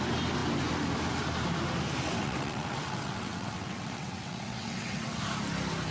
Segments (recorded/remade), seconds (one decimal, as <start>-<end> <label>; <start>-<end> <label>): 0.0-2.2 recorded; 2.2-5.2 remade; 5.2-5.9 recorded